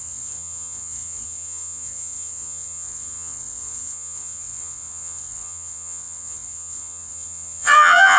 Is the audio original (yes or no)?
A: no